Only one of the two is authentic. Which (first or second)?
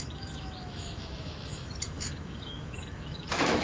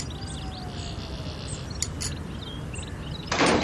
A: second